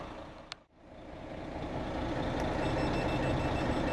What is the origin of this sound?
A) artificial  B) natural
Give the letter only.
B